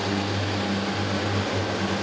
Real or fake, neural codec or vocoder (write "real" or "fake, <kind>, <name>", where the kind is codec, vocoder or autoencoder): real